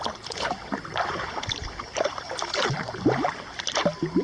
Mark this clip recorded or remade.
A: recorded